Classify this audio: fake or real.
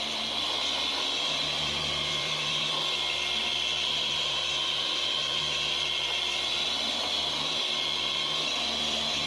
fake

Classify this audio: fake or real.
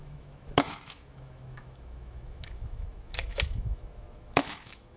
fake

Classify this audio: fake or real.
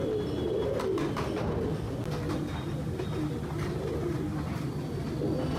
real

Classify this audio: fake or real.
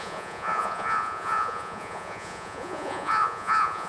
fake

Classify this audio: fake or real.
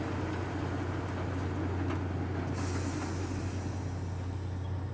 real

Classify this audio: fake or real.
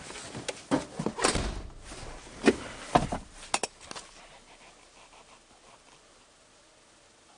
real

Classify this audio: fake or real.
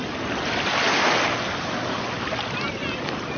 real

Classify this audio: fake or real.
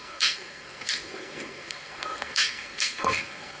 fake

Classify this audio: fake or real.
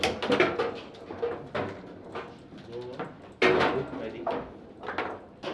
real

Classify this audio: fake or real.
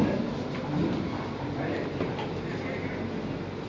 real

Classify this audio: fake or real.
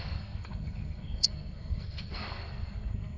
fake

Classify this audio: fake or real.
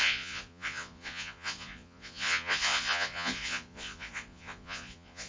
fake